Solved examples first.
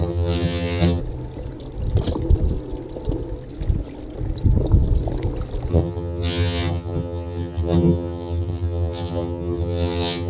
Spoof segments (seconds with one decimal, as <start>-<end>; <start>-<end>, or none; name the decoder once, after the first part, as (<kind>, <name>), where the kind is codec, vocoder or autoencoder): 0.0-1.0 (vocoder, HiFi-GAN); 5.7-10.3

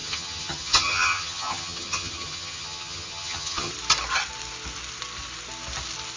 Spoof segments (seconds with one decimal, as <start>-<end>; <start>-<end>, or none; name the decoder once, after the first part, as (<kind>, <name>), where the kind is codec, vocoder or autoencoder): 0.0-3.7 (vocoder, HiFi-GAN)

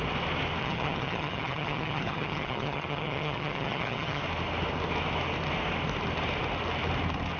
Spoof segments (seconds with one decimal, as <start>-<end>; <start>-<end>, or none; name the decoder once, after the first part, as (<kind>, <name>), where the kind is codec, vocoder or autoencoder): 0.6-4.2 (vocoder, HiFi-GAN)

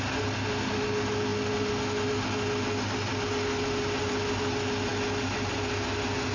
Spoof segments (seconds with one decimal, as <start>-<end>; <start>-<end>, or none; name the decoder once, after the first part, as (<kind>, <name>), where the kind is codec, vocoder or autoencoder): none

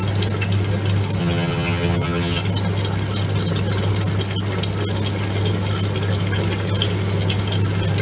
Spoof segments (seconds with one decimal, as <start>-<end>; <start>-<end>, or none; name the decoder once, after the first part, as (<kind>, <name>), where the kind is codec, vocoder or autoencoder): 1.2-2.4 (vocoder, HiFi-GAN)

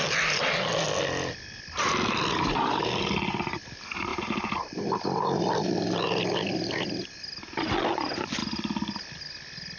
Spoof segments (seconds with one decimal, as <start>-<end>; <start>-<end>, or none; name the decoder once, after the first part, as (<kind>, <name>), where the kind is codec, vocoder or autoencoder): none

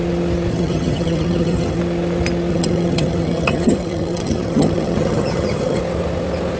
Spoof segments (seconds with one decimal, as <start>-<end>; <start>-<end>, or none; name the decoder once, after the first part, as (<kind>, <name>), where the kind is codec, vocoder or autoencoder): 0.5-1.8 (vocoder, HiFi-GAN); 2.5-5.8

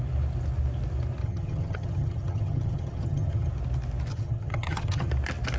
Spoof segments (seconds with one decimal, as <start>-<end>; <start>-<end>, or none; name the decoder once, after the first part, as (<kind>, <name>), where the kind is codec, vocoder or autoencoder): 1.2-3.5 (vocoder, HiFi-GAN); 4.1-5.1